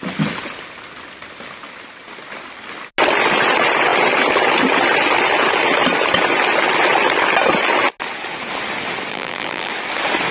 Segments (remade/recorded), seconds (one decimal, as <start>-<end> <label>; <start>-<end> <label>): 0.0-9.1 recorded; 9.1-9.7 remade; 9.7-10.3 recorded